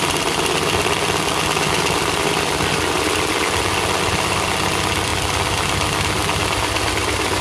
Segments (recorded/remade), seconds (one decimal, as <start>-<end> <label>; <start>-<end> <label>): 0.0-7.4 recorded